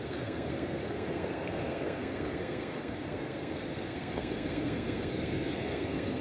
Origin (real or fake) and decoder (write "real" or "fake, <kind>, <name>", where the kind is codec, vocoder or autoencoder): fake, codec, SNAC